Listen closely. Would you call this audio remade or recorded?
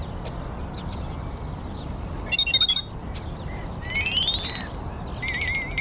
recorded